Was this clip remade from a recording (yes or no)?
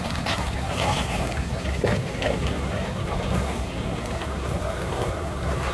yes